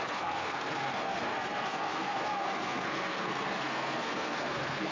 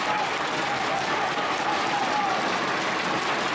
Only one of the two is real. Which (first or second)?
second